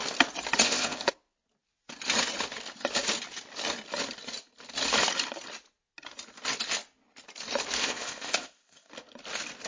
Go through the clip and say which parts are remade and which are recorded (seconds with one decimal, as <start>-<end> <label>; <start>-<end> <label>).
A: 0.0-0.6 recorded; 0.6-1.1 remade; 1.1-7.8 recorded; 7.8-8.9 remade; 8.9-9.7 recorded